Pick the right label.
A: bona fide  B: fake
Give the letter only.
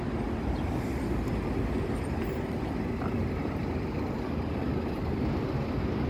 A